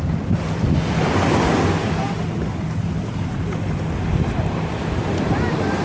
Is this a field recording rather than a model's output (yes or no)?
yes